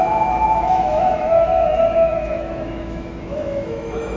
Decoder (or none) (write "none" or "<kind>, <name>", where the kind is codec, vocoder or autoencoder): autoencoder, DAC-VAE